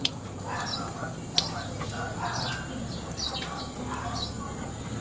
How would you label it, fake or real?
real